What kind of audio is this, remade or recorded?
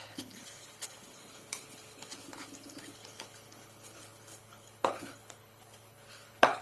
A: remade